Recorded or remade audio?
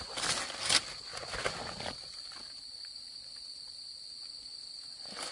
recorded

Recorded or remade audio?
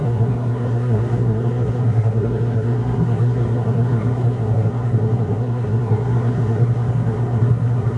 remade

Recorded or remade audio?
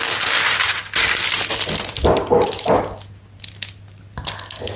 recorded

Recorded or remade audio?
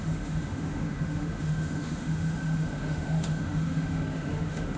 remade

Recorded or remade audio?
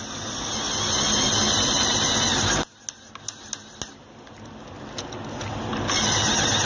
recorded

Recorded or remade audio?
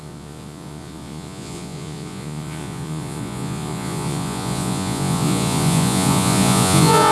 remade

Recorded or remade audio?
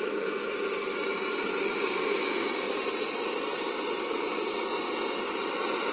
recorded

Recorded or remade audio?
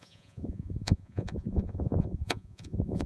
remade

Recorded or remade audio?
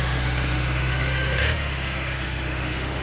remade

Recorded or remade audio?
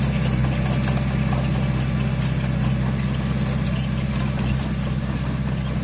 recorded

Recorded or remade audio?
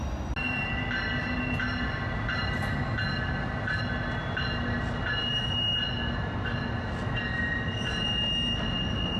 recorded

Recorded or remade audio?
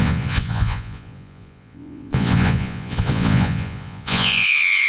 remade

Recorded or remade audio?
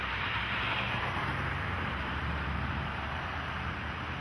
remade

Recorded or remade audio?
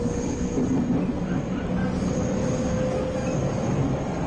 recorded